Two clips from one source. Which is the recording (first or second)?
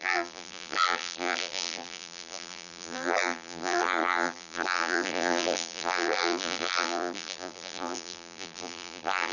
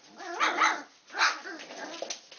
second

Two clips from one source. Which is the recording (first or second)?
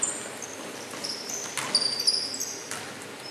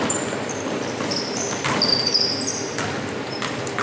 first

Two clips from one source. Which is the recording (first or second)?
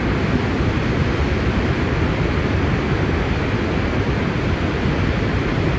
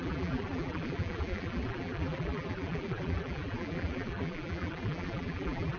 first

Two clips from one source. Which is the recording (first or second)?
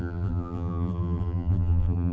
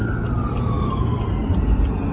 second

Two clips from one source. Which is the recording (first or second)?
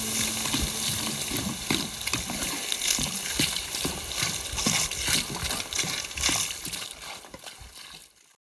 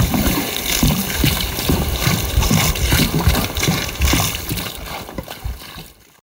first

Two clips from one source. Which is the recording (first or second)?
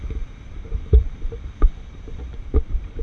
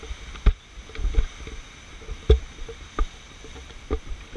second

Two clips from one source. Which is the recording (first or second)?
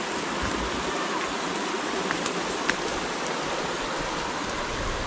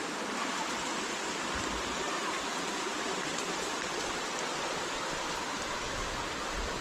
first